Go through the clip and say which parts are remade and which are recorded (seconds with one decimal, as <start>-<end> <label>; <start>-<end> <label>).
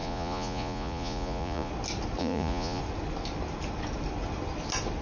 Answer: 0.0-1.7 remade; 1.7-2.2 recorded; 2.2-2.8 remade; 2.8-5.0 recorded